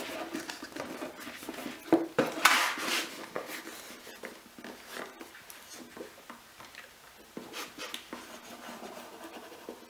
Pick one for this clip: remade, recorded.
recorded